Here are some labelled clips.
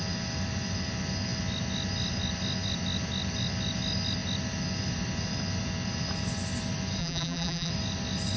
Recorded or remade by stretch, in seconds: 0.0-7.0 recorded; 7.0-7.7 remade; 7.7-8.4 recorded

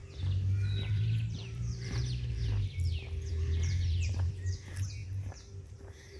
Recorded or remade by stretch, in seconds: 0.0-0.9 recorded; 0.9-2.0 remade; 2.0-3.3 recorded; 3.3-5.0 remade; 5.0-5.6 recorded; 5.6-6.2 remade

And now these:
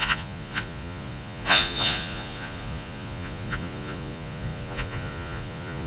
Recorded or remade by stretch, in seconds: 0.0-5.9 remade

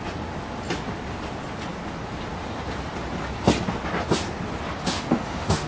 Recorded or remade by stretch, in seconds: 0.0-4.8 recorded; 4.8-5.7 remade

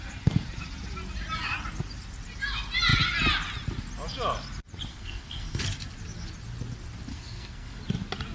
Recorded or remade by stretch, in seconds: 0.0-4.9 recorded; 4.9-5.6 remade; 5.6-7.1 recorded; 7.1-7.8 remade; 7.8-8.3 recorded